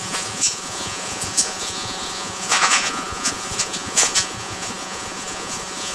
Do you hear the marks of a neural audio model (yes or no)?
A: yes